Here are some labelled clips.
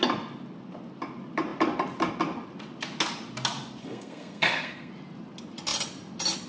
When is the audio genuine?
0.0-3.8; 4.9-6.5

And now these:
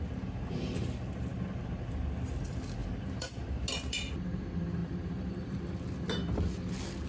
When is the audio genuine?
0.0-2.8; 3.4-4.8; 5.6-7.1

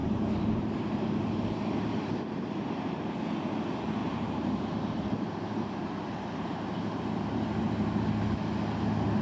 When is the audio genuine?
2.2-4.0; 7.0-9.2

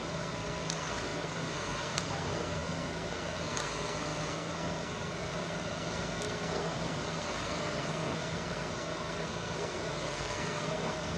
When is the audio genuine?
none